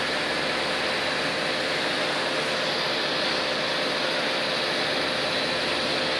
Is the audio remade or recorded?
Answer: recorded